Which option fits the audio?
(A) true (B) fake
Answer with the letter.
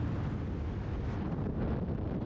A